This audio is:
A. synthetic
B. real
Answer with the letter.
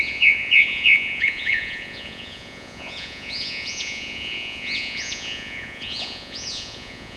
A